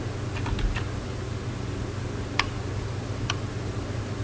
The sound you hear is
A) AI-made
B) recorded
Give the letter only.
B